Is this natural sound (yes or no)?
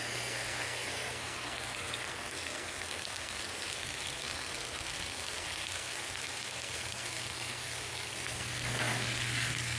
no